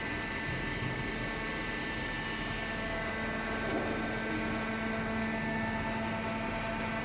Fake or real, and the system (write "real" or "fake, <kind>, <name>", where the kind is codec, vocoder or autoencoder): real